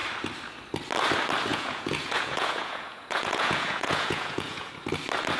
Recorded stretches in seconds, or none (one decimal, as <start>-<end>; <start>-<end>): 0.0-1.5; 4.7-5.4